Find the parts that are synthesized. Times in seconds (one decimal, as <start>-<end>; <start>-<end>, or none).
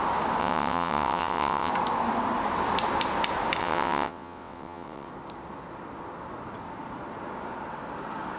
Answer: 0.4-1.7; 3.6-5.1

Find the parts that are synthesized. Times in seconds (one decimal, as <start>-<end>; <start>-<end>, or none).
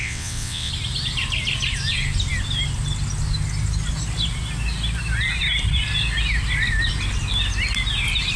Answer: 0.0-0.7